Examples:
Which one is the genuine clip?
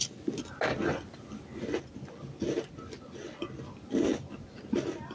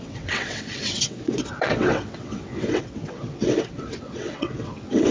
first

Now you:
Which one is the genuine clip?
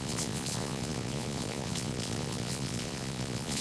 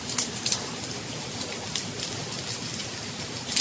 second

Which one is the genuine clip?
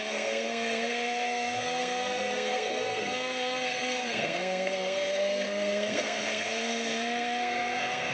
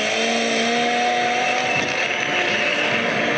second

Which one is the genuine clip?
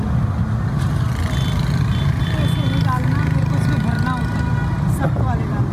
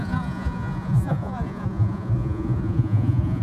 first